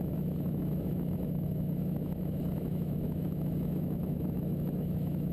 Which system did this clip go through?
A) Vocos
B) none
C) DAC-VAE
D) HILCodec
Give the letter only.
C